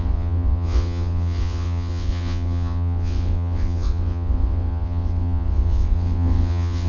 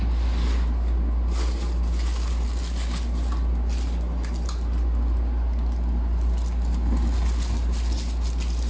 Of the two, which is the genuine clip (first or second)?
second